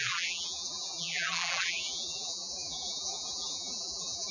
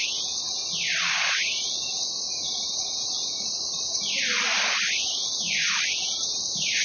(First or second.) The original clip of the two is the second